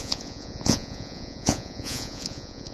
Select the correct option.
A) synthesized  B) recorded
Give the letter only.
A